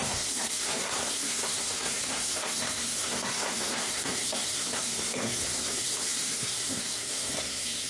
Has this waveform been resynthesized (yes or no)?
yes